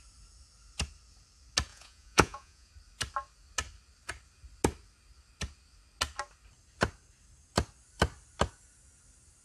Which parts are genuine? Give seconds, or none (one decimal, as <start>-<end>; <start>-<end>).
0.0-1.7; 2.7-9.4